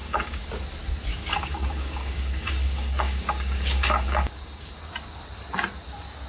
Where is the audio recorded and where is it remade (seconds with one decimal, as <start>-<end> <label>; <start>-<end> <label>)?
0.0-0.5 remade; 0.5-1.1 recorded; 1.1-4.9 remade; 4.9-6.3 recorded

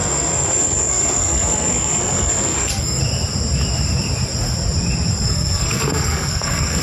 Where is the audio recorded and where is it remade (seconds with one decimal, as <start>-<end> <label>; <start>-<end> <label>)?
0.0-3.0 remade; 3.0-5.1 recorded; 5.1-6.8 remade

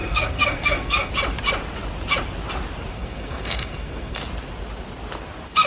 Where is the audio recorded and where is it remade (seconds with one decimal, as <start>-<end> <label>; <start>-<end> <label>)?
0.0-1.1 remade; 1.1-2.9 recorded; 2.9-4.2 remade; 4.2-5.7 recorded

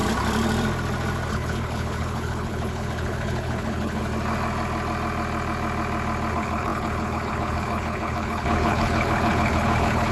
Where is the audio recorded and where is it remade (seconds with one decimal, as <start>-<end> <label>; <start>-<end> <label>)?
0.0-1.3 recorded; 1.3-4.0 remade; 4.0-6.3 recorded; 6.3-10.1 remade

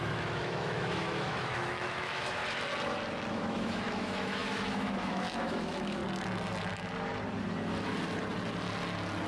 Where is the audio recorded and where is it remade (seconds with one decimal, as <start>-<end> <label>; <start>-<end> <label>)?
0.0-2.4 remade; 2.4-3.3 recorded; 3.3-6.0 remade; 6.0-9.3 recorded

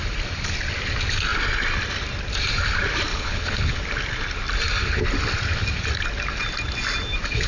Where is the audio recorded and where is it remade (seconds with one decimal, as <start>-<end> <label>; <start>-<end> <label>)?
0.0-3.1 recorded; 3.1-3.8 remade; 3.8-7.5 recorded

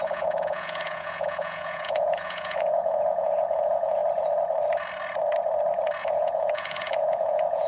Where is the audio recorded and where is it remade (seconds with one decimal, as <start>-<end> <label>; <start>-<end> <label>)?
0.0-4.0 remade; 4.0-6.0 recorded; 6.0-7.7 remade